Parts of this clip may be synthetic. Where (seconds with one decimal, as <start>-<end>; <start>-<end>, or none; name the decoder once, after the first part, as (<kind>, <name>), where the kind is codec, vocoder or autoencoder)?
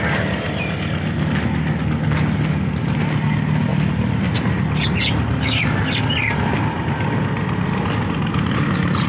none